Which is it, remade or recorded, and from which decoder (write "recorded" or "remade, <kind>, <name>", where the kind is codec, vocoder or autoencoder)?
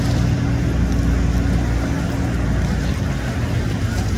recorded